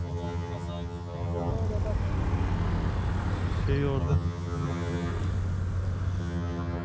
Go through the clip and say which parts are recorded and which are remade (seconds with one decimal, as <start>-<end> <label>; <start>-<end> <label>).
0.0-1.5 remade; 1.5-4.0 recorded; 4.0-5.1 remade; 5.1-6.2 recorded; 6.2-6.8 remade